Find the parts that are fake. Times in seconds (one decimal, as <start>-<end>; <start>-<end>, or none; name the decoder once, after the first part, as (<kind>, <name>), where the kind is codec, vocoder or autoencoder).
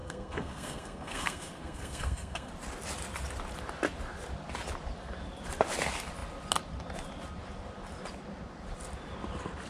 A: 0.0-2.5 (codec, SNAC)